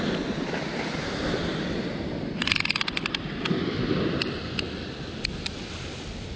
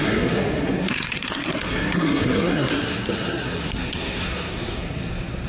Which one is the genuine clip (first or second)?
first